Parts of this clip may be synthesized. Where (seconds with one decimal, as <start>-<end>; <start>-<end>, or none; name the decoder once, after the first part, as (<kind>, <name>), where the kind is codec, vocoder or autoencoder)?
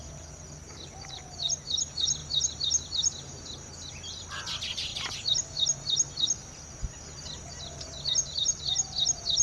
0.6-1.2 (vocoder, BigVGAN v2)